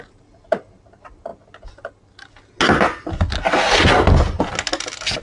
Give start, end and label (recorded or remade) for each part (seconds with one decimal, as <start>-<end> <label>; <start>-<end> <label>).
0.0-5.2 recorded